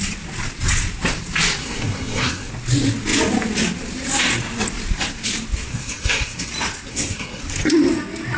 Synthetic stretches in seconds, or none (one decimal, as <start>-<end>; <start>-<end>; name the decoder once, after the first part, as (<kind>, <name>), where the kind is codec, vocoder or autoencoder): 1.6-2.5 (codec, SNAC); 5.7-6.5; 6.9-7.4